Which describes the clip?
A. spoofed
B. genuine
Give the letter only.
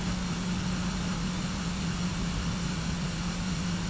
B